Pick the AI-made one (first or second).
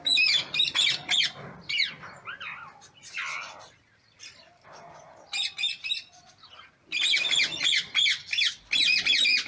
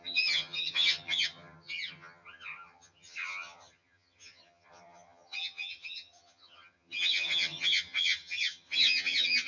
second